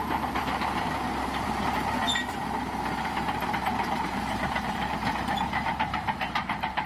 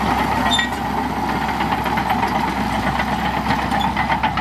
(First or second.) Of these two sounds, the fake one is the first